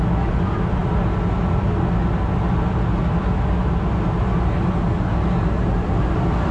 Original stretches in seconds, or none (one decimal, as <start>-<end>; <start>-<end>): 0.0-6.5